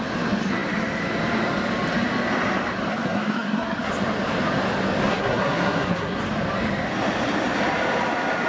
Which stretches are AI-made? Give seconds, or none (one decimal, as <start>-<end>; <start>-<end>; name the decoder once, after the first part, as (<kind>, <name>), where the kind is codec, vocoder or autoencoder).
2.9-3.9 (codec, SNAC); 5.1-6.2